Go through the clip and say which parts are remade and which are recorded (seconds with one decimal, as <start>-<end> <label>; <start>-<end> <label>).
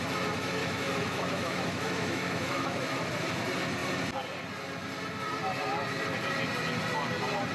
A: 0.0-0.6 recorded; 0.6-3.1 remade; 3.1-7.5 recorded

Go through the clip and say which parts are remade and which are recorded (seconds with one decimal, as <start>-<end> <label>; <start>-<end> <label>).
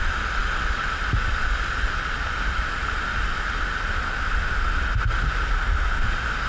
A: 0.0-6.5 recorded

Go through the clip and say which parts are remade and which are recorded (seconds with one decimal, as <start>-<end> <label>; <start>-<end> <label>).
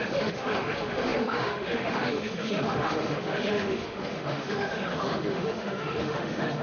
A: 0.0-6.6 remade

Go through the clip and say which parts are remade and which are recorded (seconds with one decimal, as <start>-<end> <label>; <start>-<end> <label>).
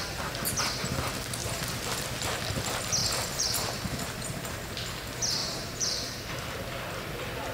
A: 0.0-1.4 recorded; 1.4-2.0 remade; 2.0-3.0 recorded; 3.0-4.7 remade; 4.7-5.4 recorded; 5.4-6.3 remade; 6.3-7.5 recorded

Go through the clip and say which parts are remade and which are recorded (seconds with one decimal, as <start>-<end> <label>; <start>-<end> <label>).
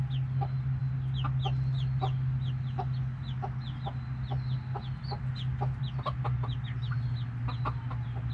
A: 0.0-8.3 recorded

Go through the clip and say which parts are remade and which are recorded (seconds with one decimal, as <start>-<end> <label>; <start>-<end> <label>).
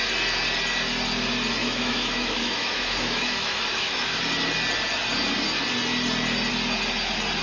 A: 0.0-1.6 recorded; 1.6-4.2 remade; 4.2-7.4 recorded